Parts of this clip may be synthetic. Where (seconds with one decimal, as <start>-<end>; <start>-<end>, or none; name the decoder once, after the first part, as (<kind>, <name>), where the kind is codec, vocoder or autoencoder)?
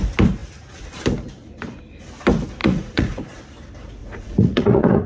2.6-3.4 (vocoder, Vocos); 4.0-5.1